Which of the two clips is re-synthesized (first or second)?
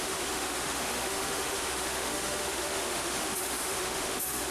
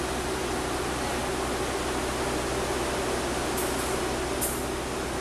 first